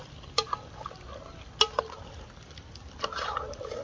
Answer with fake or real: real